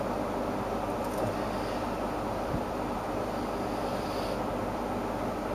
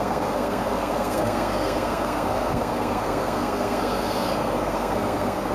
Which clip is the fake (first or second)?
second